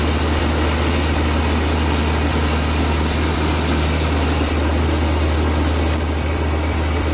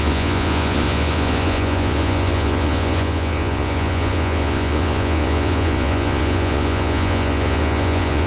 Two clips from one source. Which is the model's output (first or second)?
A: second